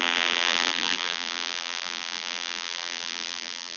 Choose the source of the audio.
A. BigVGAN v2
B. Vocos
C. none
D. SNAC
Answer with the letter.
A